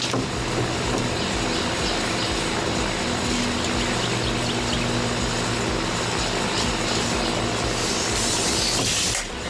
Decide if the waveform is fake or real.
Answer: real